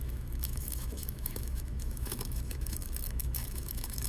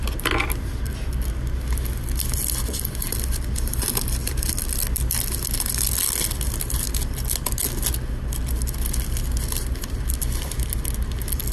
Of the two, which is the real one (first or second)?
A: second